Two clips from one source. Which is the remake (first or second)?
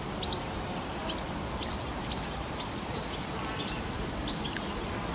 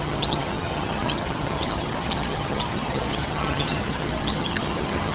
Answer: second